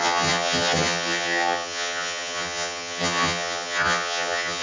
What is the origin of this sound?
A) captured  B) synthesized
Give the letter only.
B